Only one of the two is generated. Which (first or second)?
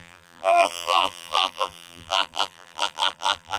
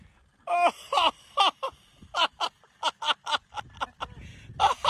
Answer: first